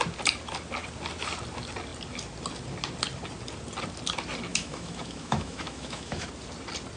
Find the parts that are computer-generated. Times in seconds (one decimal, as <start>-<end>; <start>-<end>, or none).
4.5-6.3